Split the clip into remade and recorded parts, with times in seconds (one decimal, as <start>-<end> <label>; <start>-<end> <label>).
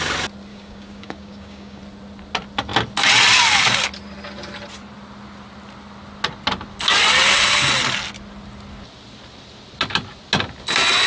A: 0.0-0.5 recorded; 0.5-1.8 remade; 1.8-11.1 recorded